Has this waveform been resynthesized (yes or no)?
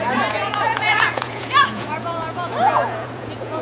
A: yes